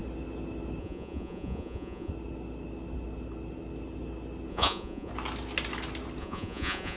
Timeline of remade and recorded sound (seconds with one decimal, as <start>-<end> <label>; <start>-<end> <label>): 0.0-0.8 recorded; 0.8-2.1 remade; 2.1-4.5 recorded; 4.5-5.1 remade; 5.1-6.2 recorded; 6.2-7.0 remade